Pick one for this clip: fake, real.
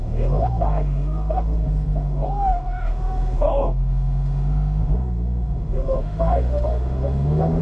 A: fake